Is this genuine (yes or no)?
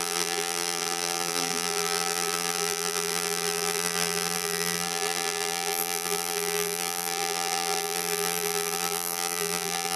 no